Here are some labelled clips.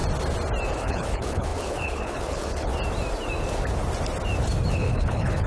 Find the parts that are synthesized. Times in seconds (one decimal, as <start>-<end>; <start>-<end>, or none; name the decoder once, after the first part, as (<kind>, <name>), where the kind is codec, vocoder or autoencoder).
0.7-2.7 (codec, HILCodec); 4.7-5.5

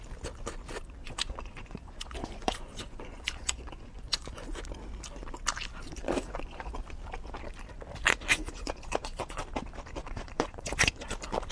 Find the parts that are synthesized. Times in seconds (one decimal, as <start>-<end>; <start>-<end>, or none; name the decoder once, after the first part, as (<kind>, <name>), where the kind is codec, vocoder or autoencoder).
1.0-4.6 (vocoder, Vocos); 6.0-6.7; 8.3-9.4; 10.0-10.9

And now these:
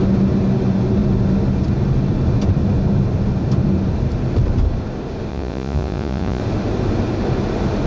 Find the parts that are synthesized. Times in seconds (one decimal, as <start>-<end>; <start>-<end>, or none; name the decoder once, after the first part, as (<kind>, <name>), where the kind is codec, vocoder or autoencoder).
5.3-6.4 (vocoder, Vocos)